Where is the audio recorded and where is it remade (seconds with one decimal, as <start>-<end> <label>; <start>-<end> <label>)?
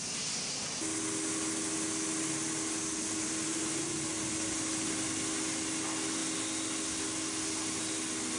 0.0-8.4 recorded